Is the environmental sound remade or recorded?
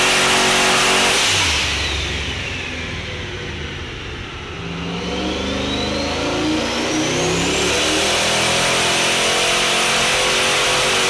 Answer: recorded